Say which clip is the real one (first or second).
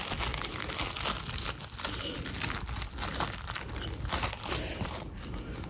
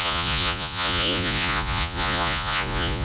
first